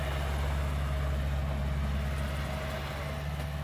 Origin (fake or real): real